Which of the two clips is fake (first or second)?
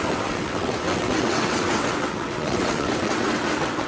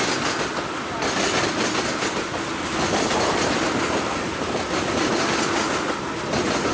first